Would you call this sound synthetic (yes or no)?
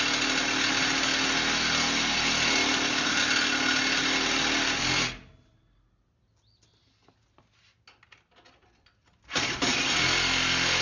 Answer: no